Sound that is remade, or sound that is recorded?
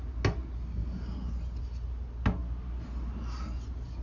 recorded